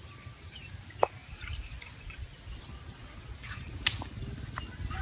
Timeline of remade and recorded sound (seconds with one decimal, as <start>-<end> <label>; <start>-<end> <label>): 0.0-5.0 recorded